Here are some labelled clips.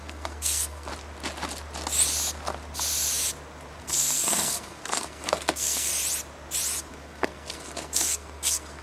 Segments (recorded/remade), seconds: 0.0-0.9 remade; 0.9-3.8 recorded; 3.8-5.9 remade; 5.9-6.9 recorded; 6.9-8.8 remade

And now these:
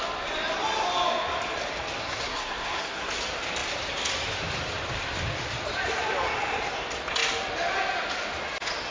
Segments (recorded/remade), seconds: 0.0-2.0 recorded; 2.0-3.1 remade; 3.1-8.9 recorded

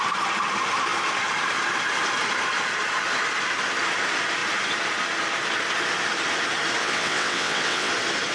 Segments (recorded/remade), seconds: 0.0-6.8 recorded; 6.8-7.9 remade; 7.9-8.3 recorded

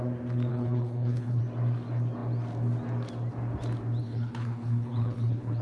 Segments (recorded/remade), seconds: 0.0-0.5 recorded; 0.5-1.4 remade; 1.4-4.0 recorded; 4.0-5.6 remade